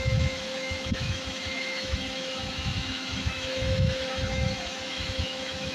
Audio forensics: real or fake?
fake